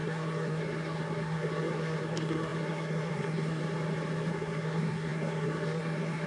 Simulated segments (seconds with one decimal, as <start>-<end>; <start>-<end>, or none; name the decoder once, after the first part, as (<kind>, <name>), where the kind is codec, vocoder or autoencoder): 0.0-3.6 (codec, SNAC); 4.3-6.3